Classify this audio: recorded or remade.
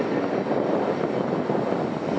recorded